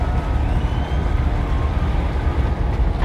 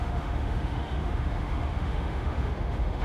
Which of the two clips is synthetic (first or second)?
second